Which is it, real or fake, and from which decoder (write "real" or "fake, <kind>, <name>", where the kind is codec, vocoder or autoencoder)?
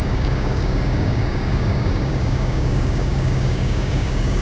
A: fake, codec, DAC